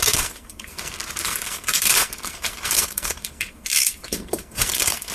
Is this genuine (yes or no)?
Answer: no